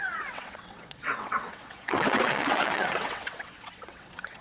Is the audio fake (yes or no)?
yes